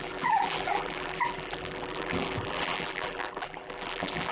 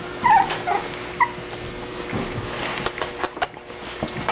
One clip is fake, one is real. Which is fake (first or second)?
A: first